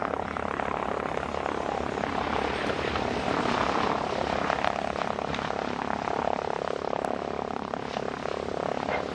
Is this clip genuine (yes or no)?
yes